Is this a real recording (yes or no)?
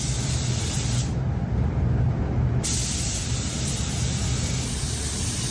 yes